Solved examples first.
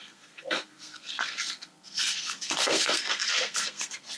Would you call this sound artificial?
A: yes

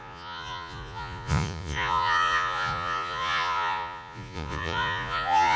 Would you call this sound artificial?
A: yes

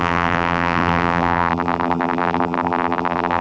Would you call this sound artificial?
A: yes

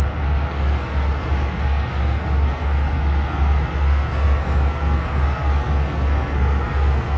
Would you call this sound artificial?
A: yes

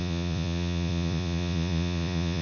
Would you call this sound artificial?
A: yes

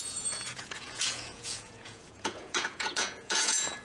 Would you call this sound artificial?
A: yes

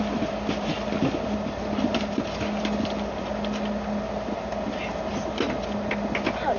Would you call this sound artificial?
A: no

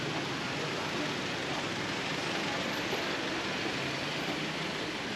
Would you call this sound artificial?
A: no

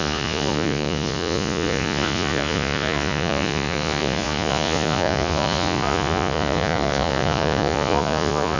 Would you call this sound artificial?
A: yes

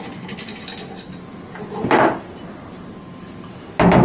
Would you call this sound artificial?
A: no